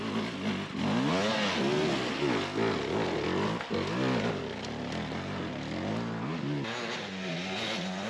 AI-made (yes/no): no